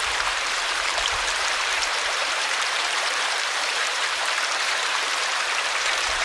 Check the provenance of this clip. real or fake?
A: fake